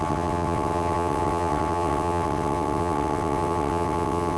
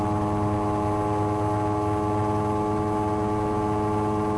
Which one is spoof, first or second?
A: first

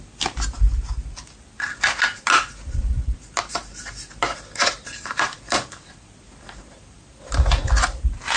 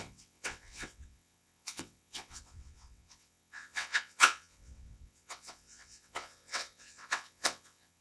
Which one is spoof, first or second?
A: second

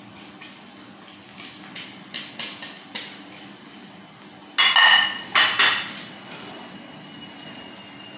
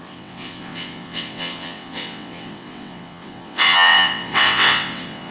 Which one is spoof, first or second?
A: second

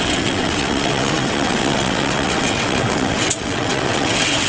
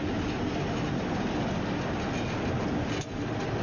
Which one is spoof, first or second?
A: first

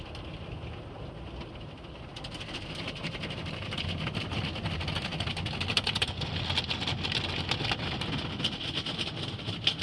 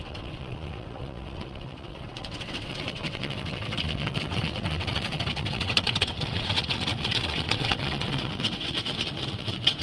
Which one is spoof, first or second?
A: second